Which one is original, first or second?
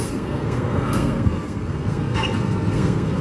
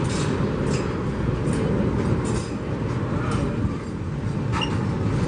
second